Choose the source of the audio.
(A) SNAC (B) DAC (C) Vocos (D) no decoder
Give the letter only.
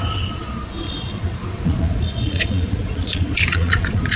C